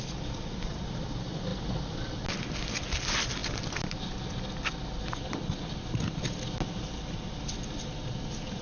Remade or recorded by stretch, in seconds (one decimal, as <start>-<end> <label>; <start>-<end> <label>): 0.0-8.6 recorded